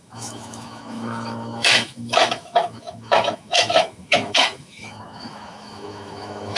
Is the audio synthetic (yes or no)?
yes